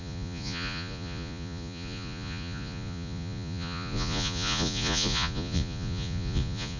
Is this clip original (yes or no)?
no